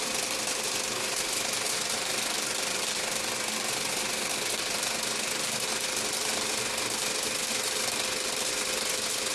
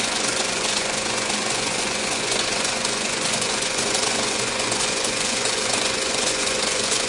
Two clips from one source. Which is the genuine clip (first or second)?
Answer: first